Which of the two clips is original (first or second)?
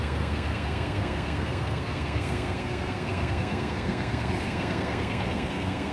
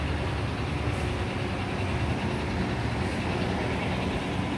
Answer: second